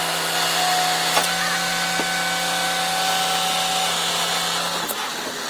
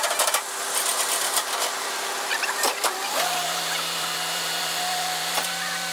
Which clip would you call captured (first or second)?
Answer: first